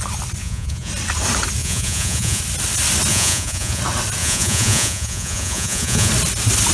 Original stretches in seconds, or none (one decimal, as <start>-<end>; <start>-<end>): 0.0-0.4; 0.9-1.6; 2.4-3.1; 3.8-4.2; 6.1-6.7